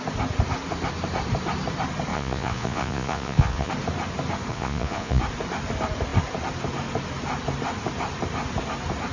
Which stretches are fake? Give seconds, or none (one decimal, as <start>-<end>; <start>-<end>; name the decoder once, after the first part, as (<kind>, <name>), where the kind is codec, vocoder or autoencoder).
2.1-3.7 (vocoder, Vocos); 4.5-5.2

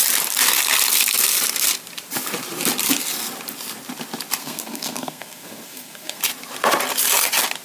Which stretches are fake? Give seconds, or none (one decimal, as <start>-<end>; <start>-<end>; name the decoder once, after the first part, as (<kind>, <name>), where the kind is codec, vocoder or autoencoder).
4.4-6.2 (codec, SNAC)

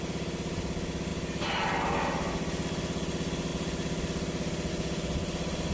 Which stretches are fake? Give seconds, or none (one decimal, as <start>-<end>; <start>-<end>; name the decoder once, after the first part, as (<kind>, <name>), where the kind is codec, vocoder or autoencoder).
none

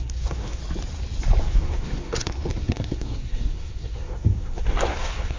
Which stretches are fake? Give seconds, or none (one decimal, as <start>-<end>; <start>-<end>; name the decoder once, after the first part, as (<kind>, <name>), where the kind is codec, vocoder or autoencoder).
0.0-0.6 (codec, SNAC); 1.4-5.4

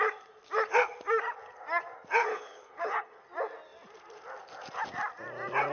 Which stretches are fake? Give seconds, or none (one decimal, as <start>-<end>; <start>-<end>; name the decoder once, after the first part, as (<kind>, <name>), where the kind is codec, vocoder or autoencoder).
2.3-3.2 (codec, HILCodec)